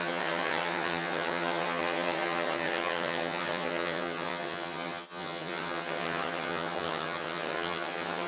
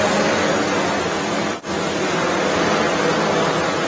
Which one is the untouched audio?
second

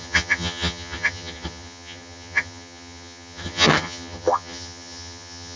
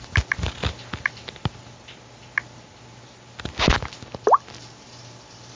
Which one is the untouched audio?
second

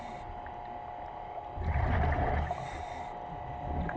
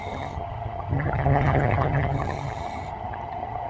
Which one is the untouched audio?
first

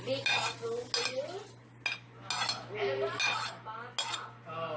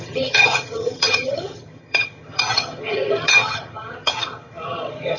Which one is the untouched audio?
first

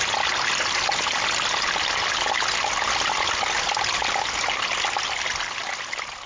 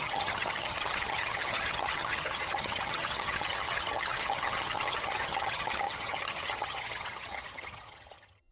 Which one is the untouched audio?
first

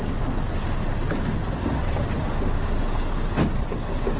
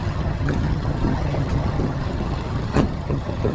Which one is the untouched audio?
first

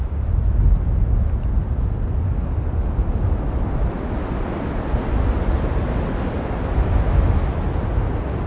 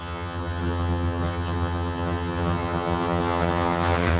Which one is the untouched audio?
first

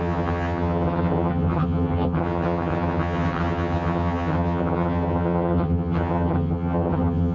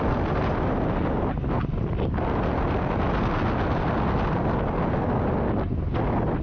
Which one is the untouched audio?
second